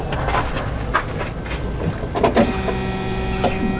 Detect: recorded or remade recorded